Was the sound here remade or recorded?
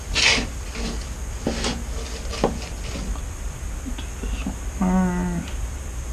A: recorded